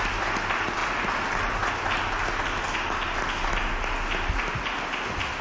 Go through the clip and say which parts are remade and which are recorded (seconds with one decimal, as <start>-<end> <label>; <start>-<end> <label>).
0.0-5.4 recorded